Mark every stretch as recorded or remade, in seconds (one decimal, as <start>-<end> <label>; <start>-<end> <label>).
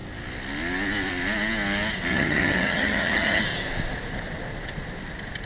0.0-2.1 recorded; 2.1-3.4 remade; 3.4-5.5 recorded